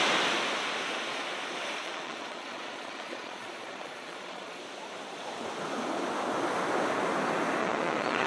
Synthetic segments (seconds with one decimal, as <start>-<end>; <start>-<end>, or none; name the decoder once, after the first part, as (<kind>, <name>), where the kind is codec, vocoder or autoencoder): 1.8-4.6 (vocoder, Vocos); 7.6-8.3